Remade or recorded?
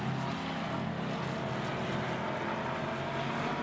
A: recorded